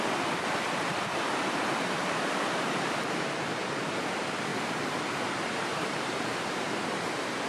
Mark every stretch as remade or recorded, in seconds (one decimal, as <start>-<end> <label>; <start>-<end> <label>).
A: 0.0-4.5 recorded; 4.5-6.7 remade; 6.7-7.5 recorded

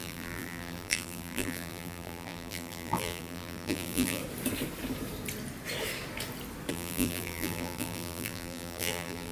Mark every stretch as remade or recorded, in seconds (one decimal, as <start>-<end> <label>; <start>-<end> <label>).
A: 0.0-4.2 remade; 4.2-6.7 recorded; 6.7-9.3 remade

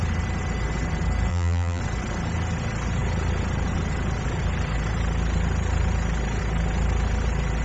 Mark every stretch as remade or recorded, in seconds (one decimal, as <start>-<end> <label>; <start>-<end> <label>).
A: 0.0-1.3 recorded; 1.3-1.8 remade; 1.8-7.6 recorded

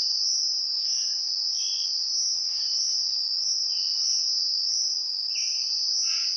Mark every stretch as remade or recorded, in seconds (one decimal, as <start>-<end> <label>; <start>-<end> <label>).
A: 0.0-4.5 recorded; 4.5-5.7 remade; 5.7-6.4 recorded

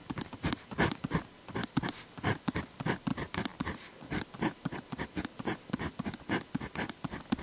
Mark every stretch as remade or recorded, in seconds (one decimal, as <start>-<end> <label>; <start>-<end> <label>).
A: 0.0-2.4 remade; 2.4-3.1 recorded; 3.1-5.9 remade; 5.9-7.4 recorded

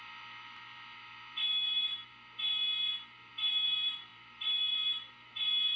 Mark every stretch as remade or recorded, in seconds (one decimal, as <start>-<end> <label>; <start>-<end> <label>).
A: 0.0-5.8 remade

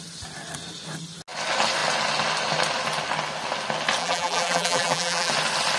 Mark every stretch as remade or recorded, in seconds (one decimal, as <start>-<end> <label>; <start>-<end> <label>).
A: 0.0-4.0 recorded; 4.0-5.3 remade; 5.3-5.8 recorded

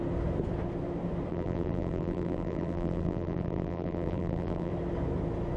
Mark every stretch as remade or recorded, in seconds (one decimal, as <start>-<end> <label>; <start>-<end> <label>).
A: 0.0-1.3 recorded; 1.3-4.7 remade; 4.7-5.6 recorded